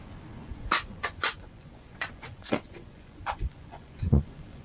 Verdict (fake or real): fake